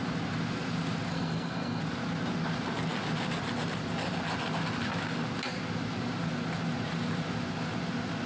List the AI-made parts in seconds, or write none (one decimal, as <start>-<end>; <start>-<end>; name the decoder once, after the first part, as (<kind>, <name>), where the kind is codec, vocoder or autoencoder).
1.1-1.8 (codec, SNAC)